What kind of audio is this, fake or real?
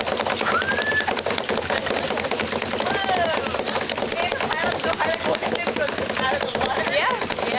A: real